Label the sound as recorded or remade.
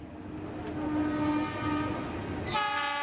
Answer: recorded